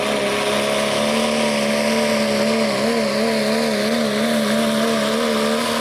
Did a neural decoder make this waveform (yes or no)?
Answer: no